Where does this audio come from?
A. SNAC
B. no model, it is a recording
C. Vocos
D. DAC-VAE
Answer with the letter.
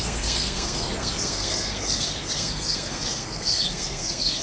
A